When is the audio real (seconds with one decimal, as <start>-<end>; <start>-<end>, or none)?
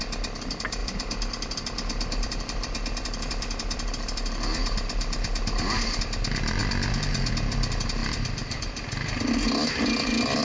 0.0-0.8; 6.0-6.6; 7.3-8.0; 8.6-10.4